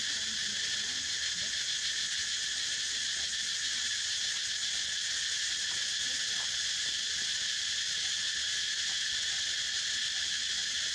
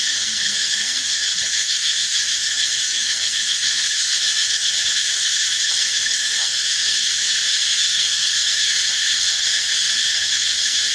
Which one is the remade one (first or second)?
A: second